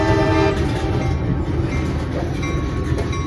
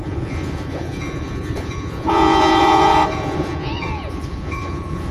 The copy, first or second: second